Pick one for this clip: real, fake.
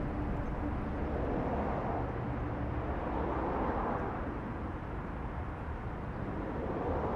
real